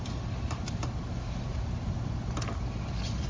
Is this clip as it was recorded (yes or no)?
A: yes